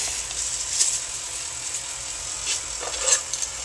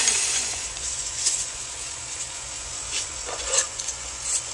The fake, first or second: second